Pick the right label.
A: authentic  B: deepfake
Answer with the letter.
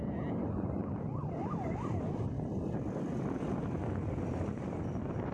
A